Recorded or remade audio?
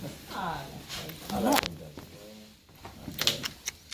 recorded